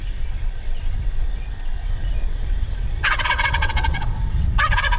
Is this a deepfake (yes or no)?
yes